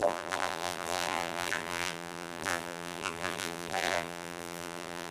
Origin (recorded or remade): remade